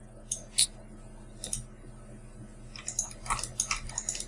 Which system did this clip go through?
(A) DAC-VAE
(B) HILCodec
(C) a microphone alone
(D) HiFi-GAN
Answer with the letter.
C